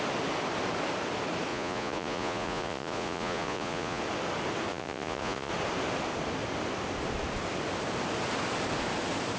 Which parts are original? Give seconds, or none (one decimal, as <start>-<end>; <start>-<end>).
0.0-1.5; 4.0-4.7; 5.5-9.4